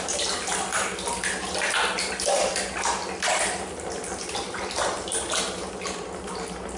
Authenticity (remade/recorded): recorded